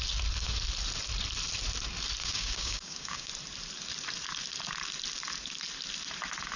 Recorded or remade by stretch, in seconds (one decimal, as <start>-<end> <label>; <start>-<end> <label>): 0.0-2.2 recorded; 2.2-3.3 remade; 3.3-6.6 recorded